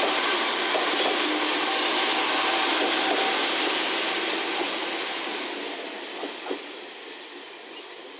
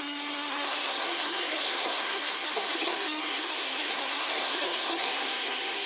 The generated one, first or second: second